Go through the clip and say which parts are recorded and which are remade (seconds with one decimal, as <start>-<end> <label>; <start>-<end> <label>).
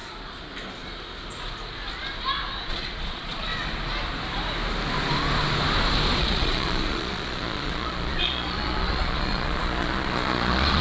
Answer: 0.0-2.7 recorded; 2.7-3.5 remade; 3.5-6.2 recorded; 6.2-10.8 remade